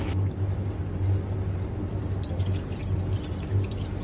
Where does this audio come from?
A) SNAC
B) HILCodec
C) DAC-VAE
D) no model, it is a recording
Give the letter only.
D